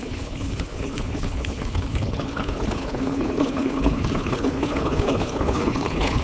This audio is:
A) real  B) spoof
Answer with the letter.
B